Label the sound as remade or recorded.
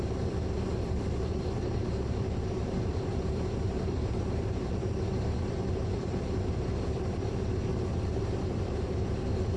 remade